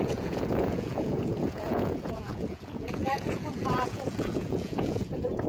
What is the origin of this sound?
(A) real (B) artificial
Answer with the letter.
B